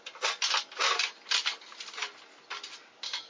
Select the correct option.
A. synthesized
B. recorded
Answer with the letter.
B